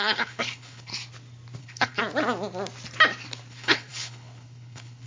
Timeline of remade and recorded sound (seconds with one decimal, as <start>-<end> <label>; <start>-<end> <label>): 0.0-0.9 remade; 0.9-1.6 recorded; 1.6-2.0 remade; 2.0-3.5 recorded; 3.5-5.1 remade